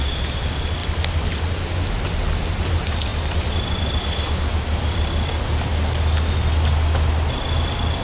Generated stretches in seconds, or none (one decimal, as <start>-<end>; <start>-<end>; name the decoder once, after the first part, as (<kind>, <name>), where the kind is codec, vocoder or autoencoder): none